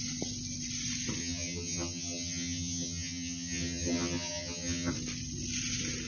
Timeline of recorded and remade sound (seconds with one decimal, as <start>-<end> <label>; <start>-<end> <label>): 0.0-1.2 recorded; 1.2-4.9 remade; 4.9-6.1 recorded